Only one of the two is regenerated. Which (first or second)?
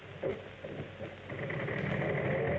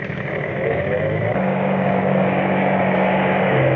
second